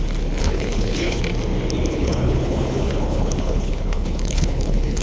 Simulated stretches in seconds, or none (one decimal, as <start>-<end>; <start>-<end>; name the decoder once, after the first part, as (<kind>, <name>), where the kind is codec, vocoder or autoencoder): 0.4-1.2 (codec, HILCodec); 1.9-5.0